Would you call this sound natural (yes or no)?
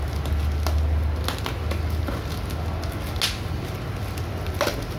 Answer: yes